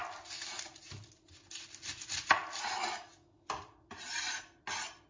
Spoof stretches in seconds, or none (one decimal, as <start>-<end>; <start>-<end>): none